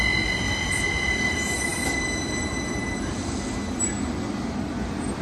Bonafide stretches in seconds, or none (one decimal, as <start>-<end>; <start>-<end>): 0.0-5.2